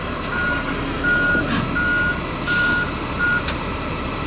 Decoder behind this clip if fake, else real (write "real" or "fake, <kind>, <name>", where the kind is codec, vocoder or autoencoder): real